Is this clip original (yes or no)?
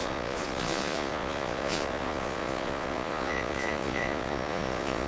no